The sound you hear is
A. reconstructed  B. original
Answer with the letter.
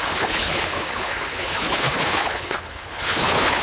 A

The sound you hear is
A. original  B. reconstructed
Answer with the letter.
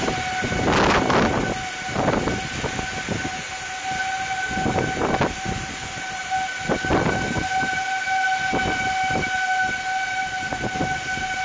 A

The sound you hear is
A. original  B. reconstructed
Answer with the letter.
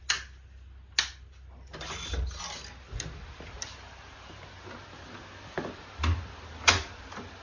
A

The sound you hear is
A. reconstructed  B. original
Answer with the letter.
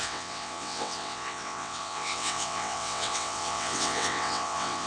A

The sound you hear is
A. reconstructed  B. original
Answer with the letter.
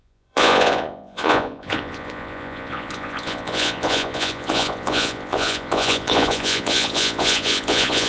A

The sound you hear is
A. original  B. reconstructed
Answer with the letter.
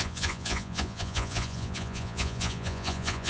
B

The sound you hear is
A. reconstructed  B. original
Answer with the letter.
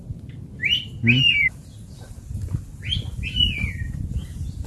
B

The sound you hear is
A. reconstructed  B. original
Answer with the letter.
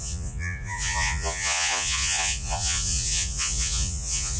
A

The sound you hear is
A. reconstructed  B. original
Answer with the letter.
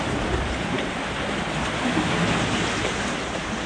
B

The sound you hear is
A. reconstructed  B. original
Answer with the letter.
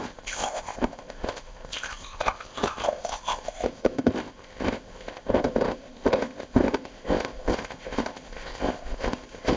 A